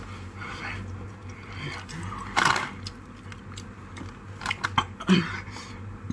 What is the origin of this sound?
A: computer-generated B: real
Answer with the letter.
B